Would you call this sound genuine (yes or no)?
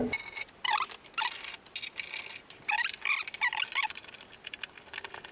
yes